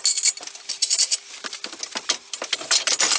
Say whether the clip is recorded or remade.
recorded